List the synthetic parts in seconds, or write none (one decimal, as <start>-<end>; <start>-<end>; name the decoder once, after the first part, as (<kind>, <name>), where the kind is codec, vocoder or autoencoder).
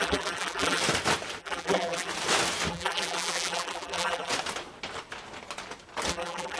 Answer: 0.0-0.8 (vocoder, BigVGAN v2); 1.4-2.1; 2.7-4.3; 6.1-6.6